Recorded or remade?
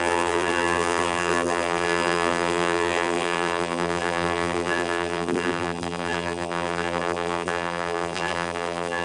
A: remade